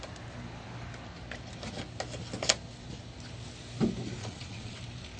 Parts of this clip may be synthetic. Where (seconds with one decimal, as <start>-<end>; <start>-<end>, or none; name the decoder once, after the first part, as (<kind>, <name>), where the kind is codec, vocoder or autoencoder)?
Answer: 4.2-4.8 (vocoder, Vocos)